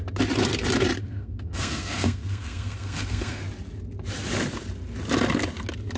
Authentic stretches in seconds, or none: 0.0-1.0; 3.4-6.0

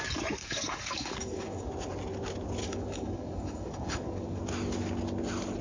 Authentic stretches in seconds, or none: 0.0-0.4; 1.7-2.6; 4.4-5.6

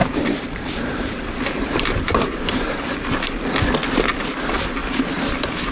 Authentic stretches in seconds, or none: 2.8-5.7

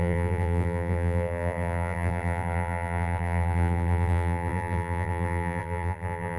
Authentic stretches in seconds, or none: none

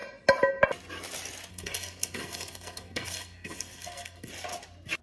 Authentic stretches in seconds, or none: 0.0-1.5; 4.3-5.0